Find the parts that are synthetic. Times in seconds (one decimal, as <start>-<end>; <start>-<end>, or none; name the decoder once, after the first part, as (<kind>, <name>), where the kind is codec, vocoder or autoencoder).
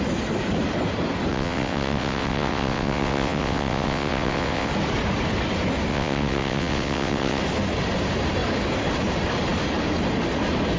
1.3-4.7 (vocoder, WaveNeXt); 5.9-7.4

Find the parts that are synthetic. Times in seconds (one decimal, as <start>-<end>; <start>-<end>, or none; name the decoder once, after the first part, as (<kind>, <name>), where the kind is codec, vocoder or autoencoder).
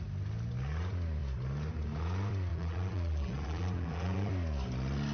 2.5-4.3 (vocoder, BigVGAN v2)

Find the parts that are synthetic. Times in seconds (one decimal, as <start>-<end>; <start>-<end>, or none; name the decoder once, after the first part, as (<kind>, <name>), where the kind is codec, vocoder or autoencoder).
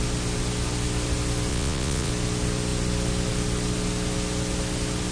1.5-2.1 (vocoder, Vocos)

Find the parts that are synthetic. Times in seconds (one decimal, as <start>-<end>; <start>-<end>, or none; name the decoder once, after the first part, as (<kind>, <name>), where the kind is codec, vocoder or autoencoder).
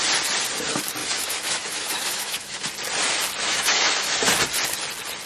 1.0-2.6 (autoencoder, DAC-VAE); 3.4-4.3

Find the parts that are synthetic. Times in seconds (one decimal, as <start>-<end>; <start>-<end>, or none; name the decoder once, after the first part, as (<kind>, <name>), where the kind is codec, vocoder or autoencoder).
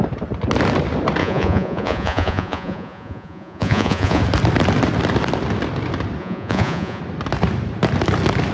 1.2-4.2 (vocoder, Vocos); 6.2-7.0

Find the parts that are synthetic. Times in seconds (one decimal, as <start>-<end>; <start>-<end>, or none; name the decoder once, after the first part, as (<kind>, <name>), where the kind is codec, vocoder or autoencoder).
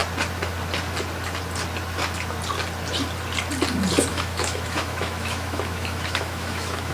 4.1-6.9 (autoencoder, DAC-VAE)